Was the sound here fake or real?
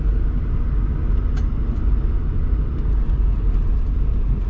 real